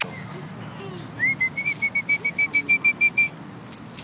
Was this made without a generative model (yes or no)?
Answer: yes